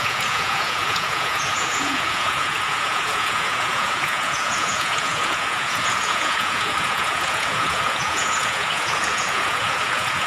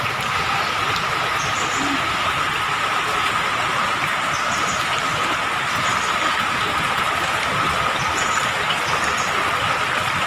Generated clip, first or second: first